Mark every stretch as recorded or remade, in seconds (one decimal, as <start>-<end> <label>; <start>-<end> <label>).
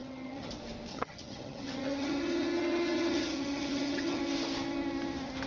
0.0-0.5 remade; 0.5-0.9 recorded; 0.9-4.2 remade; 4.2-5.5 recorded